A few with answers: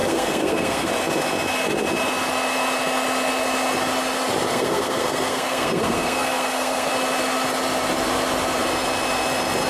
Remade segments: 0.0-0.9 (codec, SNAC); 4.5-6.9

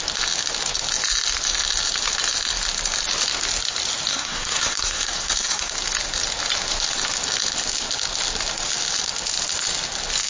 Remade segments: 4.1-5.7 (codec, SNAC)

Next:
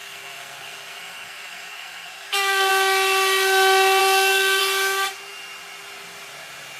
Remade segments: 0.0-2.7 (codec, SNAC); 4.0-4.6

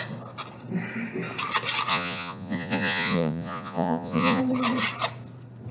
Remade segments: 1.9-4.4 (vocoder, Vocos)

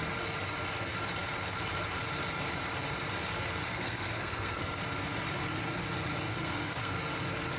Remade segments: 3.7-4.8 (codec, SNAC); 6.3-6.9

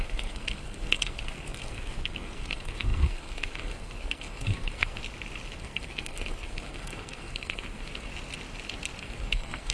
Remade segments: 0.0-5.0 (codec, SNAC); 5.6-8.1; 9.0-9.7

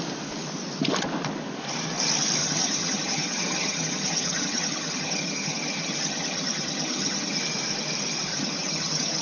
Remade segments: 2.4-7.4 (vocoder, HiFi-GAN); 8.3-9.2

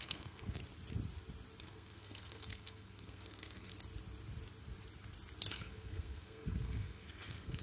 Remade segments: 0.0-0.6 (codec, SNAC); 1.6-3.7; 5.5-7.6